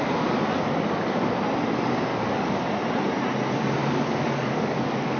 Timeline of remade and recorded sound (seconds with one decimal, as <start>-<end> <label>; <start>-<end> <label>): 0.0-2.1 recorded; 2.1-2.6 remade; 2.6-3.8 recorded; 3.8-5.2 remade